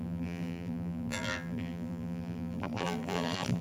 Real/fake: fake